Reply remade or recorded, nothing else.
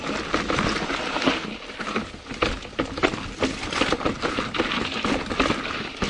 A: recorded